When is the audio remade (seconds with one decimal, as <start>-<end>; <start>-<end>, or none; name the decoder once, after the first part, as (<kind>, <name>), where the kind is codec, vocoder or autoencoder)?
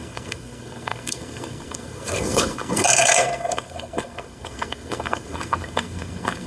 0.0-6.5 (codec, SNAC)